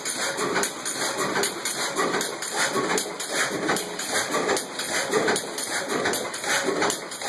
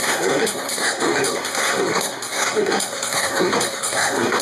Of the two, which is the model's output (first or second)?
second